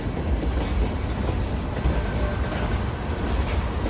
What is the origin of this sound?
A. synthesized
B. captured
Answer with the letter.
B